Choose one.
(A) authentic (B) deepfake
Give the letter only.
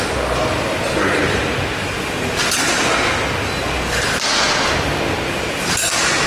A